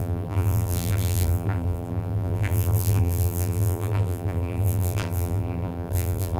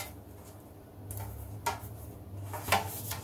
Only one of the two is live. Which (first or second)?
second